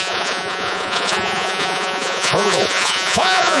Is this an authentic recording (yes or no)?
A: no